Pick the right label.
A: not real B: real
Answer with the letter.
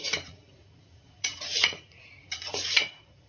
A